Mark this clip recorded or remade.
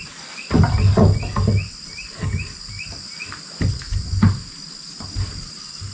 recorded